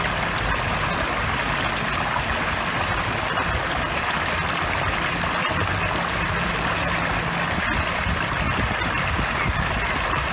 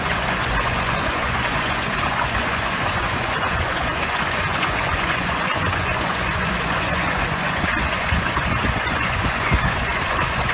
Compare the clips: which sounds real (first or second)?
first